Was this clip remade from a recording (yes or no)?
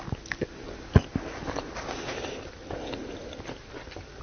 no